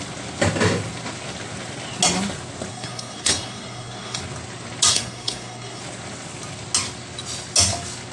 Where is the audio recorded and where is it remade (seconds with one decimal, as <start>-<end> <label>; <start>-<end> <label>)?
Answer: 0.0-2.7 recorded; 2.7-4.2 remade; 4.2-4.9 recorded; 4.9-5.8 remade; 5.8-8.1 recorded